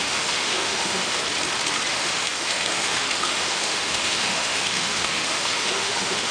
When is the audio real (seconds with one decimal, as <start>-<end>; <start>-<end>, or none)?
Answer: 1.2-1.9